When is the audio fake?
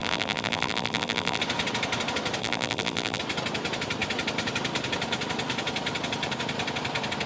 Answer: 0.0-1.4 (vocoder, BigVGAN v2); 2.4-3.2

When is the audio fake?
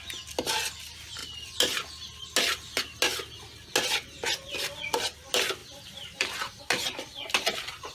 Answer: 5.6-6.6 (vocoder, BigVGAN v2)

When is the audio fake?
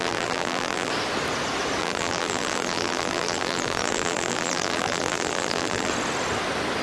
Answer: 0.0-0.9 (vocoder, BigVGAN v2); 1.8-5.9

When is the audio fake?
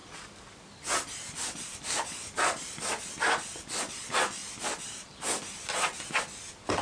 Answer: none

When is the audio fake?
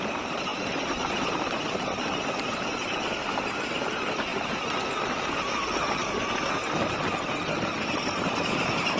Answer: none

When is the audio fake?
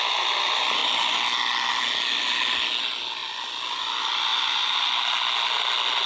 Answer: 0.8-1.7 (vocoder, BigVGAN v2)